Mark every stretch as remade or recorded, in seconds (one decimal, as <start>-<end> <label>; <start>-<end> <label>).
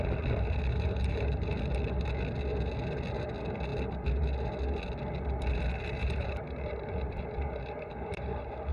0.0-0.7 recorded; 0.7-1.5 remade; 1.5-6.0 recorded; 6.0-8.7 remade